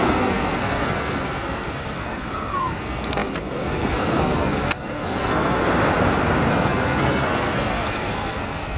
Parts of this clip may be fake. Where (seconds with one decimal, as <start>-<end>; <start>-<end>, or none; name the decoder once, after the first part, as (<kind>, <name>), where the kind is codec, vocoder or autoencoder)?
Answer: 0.0-5.6 (codec, SNAC); 6.5-8.8